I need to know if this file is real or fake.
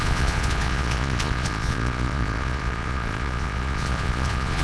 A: fake